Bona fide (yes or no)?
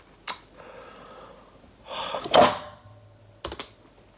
yes